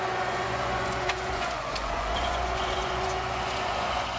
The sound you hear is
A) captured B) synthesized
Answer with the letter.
B